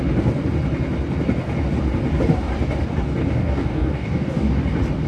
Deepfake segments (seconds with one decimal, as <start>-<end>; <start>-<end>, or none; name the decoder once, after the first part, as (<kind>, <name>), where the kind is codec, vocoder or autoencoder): 3.2-4.6 (codec, DAC)